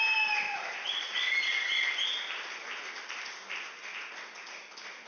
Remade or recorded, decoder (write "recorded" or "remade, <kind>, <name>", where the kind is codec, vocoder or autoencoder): recorded